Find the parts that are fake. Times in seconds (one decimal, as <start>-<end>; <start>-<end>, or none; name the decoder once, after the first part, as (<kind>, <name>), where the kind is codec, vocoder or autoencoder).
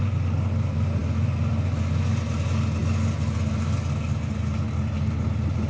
none